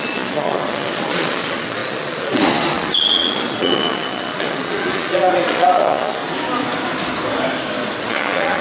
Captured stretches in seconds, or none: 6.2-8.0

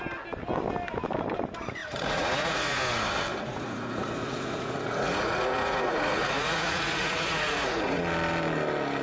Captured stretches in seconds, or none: 0.0-1.8; 2.8-3.3; 8.0-9.0

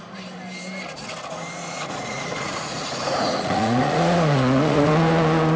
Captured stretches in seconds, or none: 0.0-1.6; 4.9-5.6

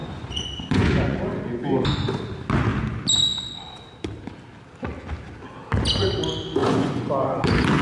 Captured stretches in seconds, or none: 1.2-6.6; 7.1-7.8